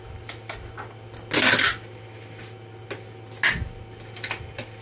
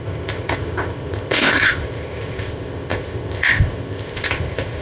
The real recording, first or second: first